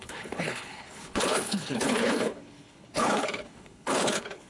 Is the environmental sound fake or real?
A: fake